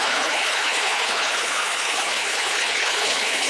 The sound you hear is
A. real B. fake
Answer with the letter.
B